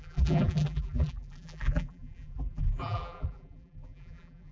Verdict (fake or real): fake